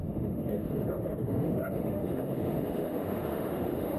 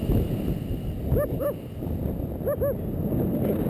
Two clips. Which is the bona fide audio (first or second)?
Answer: second